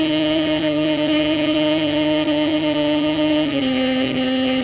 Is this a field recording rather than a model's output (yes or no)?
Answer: no